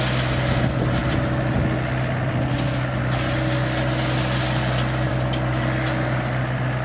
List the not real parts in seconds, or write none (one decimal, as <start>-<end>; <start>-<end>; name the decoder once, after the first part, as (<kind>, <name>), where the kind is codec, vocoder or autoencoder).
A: none

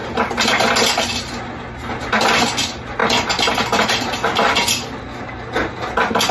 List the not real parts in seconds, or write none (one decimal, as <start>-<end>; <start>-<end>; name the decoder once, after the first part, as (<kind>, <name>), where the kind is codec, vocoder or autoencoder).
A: none

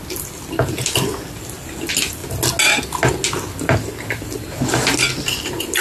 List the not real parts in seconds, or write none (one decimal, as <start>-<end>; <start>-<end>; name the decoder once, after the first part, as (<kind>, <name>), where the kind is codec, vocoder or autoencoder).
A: none

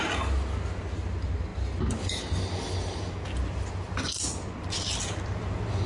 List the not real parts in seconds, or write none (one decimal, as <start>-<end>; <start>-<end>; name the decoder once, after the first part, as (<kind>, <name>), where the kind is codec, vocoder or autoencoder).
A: none

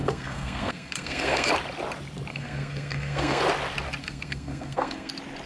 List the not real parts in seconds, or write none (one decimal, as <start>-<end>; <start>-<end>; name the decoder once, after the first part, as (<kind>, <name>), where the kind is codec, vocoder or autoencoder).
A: 0.0-1.5 (codec, SNAC); 2.3-3.4; 4.0-5.1

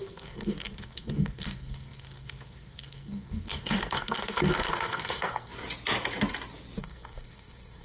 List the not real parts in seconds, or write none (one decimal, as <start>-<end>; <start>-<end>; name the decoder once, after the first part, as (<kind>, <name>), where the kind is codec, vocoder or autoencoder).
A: 0.0-5.5 (codec, SNAC); 6.8-7.8

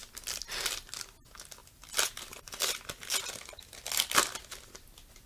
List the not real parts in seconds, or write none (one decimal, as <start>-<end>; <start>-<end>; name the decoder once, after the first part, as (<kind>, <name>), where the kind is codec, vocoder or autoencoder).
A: none

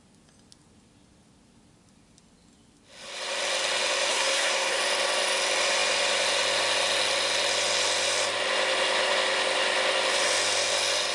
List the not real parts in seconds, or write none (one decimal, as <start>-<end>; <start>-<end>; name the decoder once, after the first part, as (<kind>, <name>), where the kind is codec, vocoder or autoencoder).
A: 4.1-4.8 (codec, SNAC)